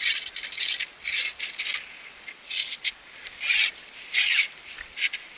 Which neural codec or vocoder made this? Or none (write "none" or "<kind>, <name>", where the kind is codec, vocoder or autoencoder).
none